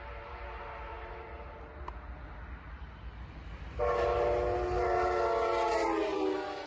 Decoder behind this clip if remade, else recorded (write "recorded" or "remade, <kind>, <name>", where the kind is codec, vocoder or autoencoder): recorded